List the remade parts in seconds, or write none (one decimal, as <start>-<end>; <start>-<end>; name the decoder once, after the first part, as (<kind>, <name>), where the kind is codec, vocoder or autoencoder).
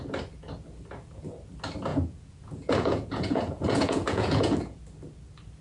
1.9-4.8 (vocoder, Vocos)